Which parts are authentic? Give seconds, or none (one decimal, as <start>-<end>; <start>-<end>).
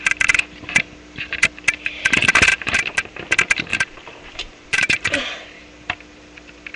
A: 0.0-2.5; 3.2-3.7; 5.6-6.8